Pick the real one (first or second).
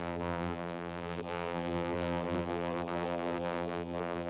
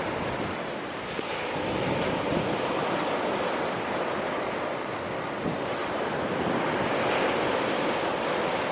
second